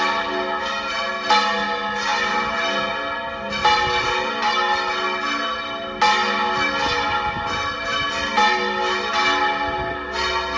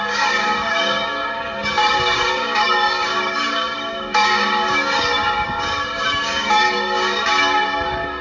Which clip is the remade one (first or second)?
second